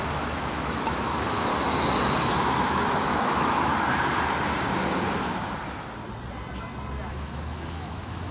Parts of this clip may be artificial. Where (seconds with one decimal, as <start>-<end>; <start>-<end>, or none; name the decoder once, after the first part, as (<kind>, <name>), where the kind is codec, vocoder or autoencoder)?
0.0-1.5 (autoencoder, DAC-VAE); 2.3-3.7; 7.1-8.3